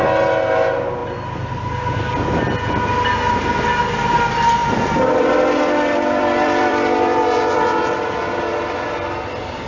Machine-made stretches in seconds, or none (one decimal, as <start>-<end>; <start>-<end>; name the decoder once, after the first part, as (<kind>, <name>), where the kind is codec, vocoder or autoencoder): 4.6-7.8 (vocoder, BigVGAN v2)